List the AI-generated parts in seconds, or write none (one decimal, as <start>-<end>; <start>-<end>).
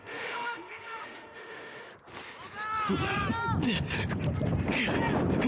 0.0-1.9